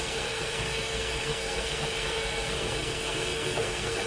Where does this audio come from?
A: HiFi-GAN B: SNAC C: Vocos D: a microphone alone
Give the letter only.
B